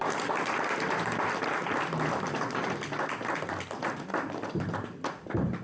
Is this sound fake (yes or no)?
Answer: no